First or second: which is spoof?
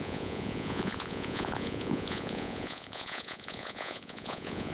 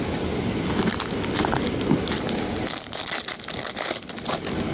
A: first